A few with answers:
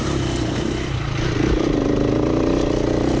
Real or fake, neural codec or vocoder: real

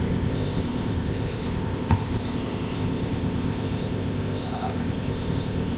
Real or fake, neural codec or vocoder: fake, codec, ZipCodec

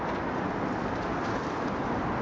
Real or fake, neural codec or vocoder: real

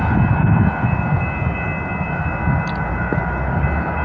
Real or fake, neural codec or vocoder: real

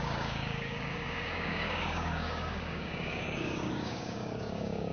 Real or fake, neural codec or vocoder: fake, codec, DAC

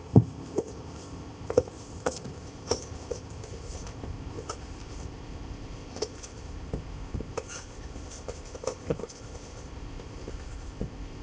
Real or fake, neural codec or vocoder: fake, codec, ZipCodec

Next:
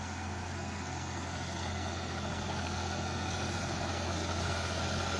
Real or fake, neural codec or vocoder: fake, codec, SNAC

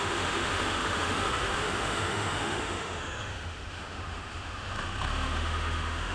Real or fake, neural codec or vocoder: fake, autoencoder, DAC-VAE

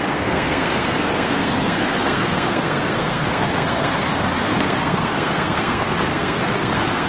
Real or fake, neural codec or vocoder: fake, codec, SNAC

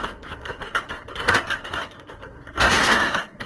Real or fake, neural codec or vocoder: fake, codec, SNAC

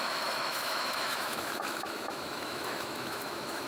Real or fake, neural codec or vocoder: fake, autoencoder, DAC-VAE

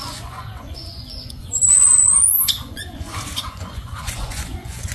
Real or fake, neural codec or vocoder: fake, vocoder, Vocos